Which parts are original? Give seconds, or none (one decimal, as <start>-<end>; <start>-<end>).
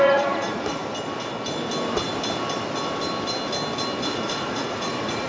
0.8-4.0